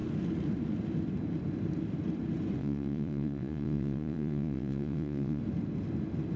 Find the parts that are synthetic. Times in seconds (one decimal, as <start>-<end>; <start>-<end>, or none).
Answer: 2.6-5.4